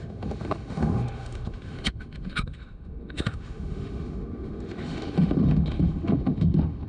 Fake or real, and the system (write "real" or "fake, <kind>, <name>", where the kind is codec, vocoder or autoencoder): fake, autoencoder, DAC-VAE